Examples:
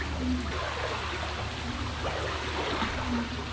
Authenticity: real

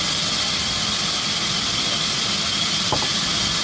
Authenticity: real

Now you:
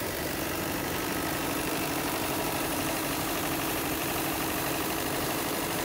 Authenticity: fake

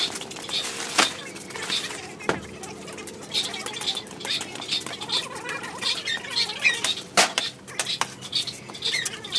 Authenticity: real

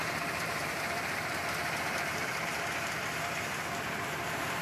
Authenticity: fake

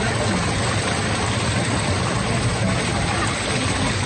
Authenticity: real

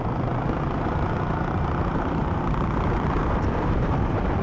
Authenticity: fake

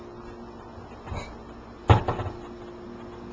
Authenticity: real